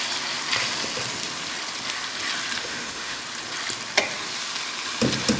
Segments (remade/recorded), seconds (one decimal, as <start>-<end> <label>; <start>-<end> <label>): 0.0-2.6 recorded; 2.6-3.2 remade; 3.2-5.4 recorded